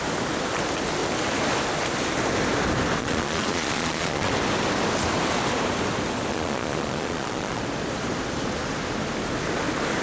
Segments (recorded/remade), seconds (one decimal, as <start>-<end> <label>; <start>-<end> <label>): 0.0-3.0 recorded; 3.0-4.3 remade; 4.3-6.3 recorded; 6.3-7.6 remade; 7.6-10.0 recorded